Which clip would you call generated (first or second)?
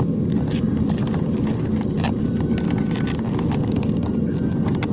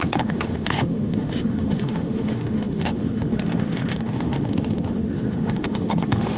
second